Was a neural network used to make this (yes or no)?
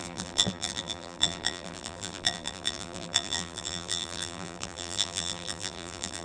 yes